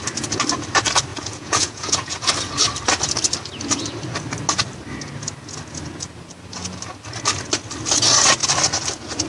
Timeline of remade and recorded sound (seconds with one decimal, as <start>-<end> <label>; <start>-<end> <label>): 0.0-1.1 recorded; 1.1-2.3 remade; 2.3-9.3 recorded

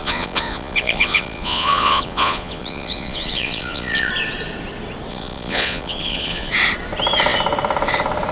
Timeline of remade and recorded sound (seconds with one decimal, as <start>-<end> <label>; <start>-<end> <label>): 0.0-4.1 remade; 4.1-5.1 recorded; 5.1-6.5 remade; 6.5-8.3 recorded

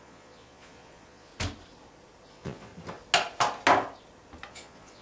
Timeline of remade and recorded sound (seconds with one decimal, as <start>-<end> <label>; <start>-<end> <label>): 0.0-1.3 remade; 1.3-2.3 recorded; 2.3-2.7 remade; 2.7-4.5 recorded; 4.5-5.0 remade

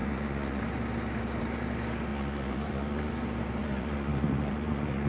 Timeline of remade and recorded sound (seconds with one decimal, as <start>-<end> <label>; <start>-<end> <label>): 0.0-0.6 remade; 0.6-2.1 recorded; 2.1-3.1 remade; 3.1-3.6 recorded; 3.6-5.1 remade